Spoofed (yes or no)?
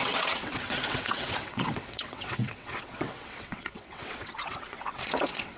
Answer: yes